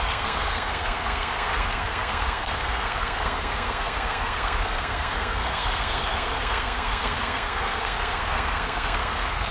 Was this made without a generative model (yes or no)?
no